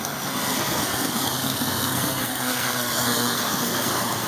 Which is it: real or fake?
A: fake